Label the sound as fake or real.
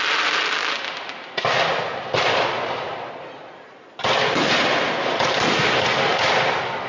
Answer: real